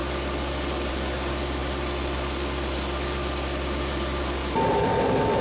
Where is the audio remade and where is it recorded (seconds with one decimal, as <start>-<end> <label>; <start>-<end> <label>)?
0.0-5.4 remade